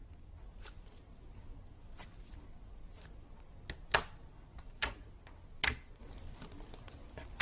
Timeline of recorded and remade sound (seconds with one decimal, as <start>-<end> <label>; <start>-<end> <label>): 0.0-4.5 recorded; 4.5-5.1 remade; 5.1-7.4 recorded